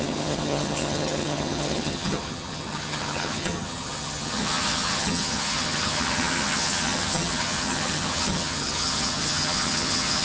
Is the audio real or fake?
fake